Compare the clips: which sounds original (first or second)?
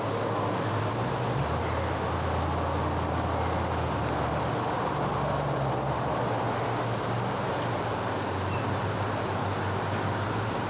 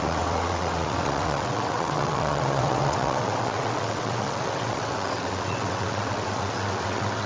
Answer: first